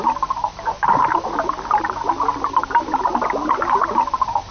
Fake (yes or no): no